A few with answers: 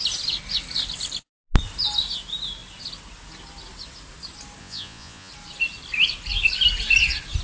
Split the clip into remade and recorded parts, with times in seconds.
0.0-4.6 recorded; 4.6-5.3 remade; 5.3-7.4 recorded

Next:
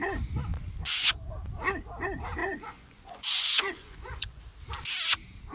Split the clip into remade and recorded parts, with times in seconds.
0.0-0.5 recorded; 0.5-1.1 remade; 1.1-2.4 recorded; 2.4-4.4 remade; 4.4-5.5 recorded

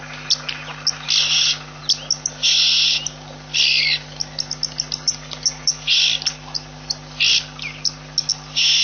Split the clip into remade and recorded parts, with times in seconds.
0.0-8.8 recorded

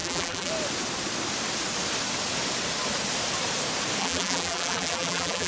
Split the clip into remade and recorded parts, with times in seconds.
0.0-0.5 remade; 0.5-4.0 recorded; 4.0-5.5 remade

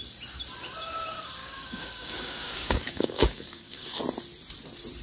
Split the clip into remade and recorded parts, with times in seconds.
0.0-1.4 recorded; 1.4-4.0 remade; 4.0-5.0 recorded